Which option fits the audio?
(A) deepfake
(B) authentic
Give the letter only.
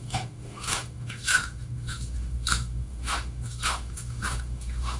A